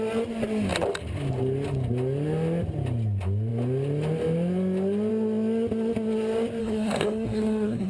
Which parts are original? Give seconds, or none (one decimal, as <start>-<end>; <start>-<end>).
0.0-6.6